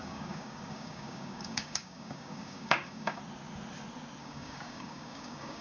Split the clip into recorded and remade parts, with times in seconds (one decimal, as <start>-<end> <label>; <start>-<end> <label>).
0.0-3.2 remade; 3.2-4.2 recorded; 4.2-5.6 remade